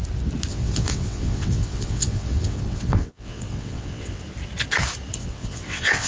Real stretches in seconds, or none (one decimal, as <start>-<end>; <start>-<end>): 0.0-0.5; 4.2-5.2